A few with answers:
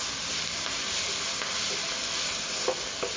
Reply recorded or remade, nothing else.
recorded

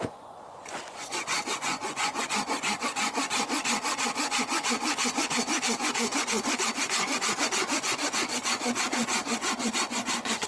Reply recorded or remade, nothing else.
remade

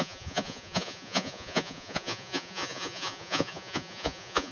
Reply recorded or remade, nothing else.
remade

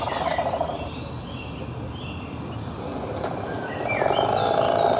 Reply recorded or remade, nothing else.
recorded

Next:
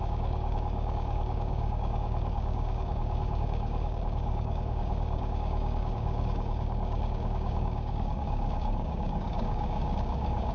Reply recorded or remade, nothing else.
remade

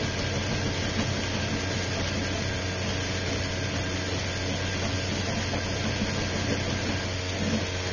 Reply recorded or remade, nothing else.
recorded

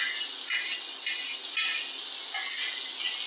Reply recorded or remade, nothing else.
recorded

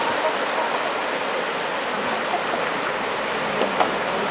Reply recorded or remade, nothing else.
recorded